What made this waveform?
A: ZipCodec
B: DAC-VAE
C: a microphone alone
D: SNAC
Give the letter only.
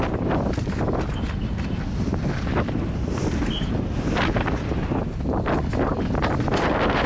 C